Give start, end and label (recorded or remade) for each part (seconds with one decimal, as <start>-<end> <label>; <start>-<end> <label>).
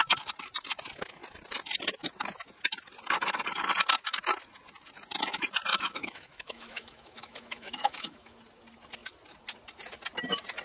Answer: 0.0-5.7 recorded; 5.7-8.4 remade; 8.4-10.6 recorded